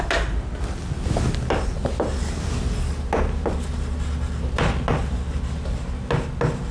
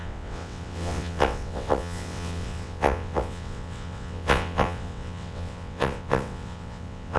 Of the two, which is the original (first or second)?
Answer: first